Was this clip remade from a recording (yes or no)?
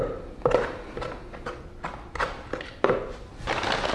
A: no